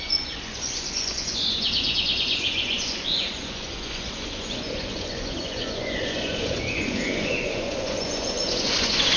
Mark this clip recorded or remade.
remade